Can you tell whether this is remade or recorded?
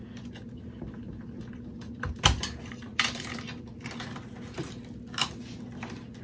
recorded